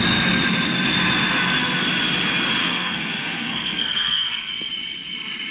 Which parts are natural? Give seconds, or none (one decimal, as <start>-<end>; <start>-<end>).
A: 0.0-2.6; 4.5-5.5